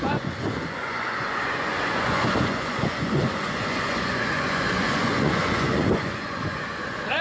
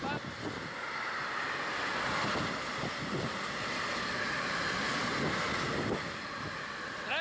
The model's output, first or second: first